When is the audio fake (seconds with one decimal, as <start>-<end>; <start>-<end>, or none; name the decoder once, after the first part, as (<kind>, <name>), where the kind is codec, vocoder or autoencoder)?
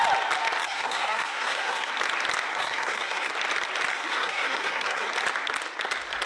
0.6-1.9 (codec, SNAC); 2.5-3.3; 3.9-5.1